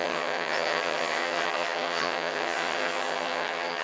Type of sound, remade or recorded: remade